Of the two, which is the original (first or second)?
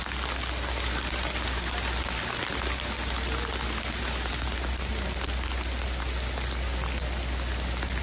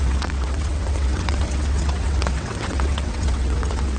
first